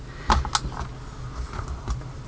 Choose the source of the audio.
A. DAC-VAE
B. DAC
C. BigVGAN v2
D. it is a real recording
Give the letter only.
D